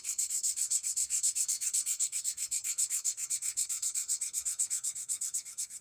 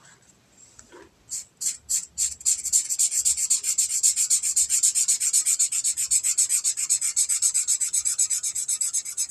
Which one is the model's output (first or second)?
first